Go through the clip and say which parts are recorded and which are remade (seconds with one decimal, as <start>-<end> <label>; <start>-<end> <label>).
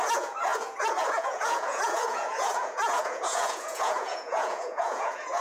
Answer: 0.0-5.4 remade